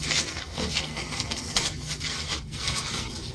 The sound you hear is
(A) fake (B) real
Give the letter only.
A